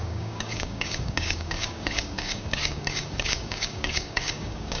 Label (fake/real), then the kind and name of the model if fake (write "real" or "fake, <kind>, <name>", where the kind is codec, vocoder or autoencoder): fake, codec, DAC